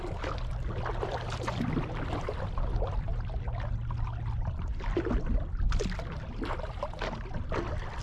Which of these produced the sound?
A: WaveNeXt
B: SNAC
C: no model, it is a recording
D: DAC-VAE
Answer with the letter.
C